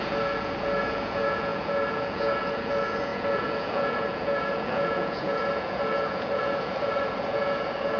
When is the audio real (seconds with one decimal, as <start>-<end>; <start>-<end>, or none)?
none